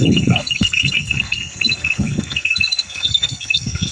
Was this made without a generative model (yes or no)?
no